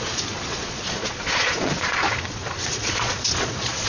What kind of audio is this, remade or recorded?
remade